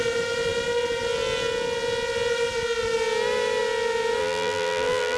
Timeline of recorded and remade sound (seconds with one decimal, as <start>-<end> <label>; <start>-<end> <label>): 0.0-4.2 recorded; 4.2-5.2 remade